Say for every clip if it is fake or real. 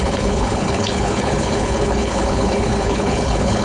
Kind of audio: fake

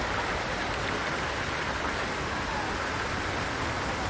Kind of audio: real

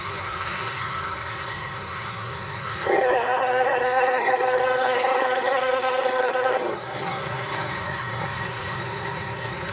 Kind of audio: fake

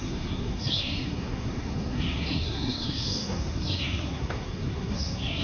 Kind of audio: fake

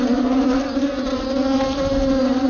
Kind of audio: real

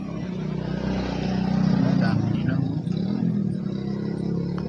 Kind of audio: real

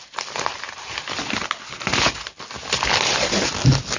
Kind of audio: real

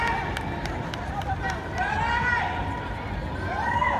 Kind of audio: real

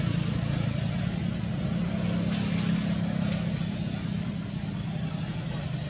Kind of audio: real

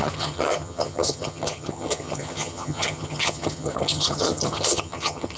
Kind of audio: fake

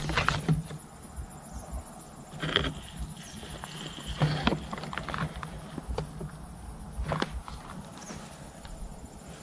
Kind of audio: real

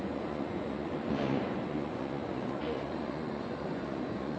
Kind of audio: fake